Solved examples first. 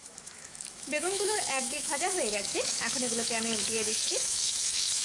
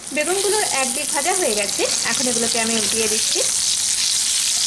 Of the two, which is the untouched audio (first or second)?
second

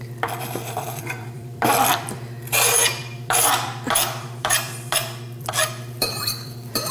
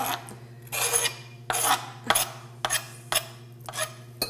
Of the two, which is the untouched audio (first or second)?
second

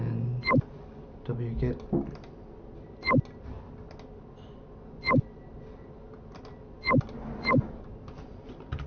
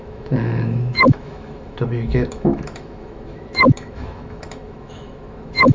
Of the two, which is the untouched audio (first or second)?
first